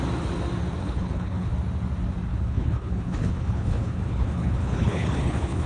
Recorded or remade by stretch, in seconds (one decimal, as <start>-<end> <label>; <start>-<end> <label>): 0.0-0.8 recorded; 0.8-1.5 remade; 1.5-2.3 recorded; 2.3-5.7 remade